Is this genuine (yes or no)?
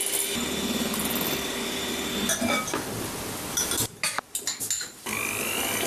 yes